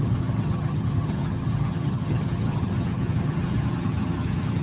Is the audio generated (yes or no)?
yes